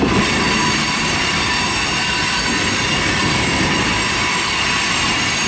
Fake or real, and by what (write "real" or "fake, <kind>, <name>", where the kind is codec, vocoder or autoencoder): real